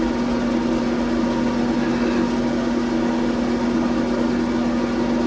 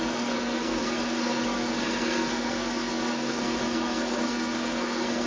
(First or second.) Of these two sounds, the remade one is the second